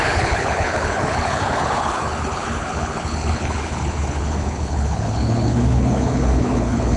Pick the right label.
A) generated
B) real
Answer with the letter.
A